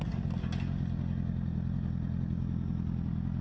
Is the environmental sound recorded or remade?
recorded